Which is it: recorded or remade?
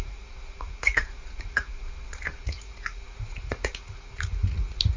remade